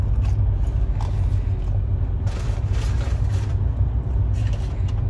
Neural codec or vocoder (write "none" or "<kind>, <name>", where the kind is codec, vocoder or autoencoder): none